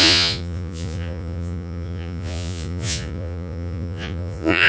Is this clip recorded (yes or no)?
no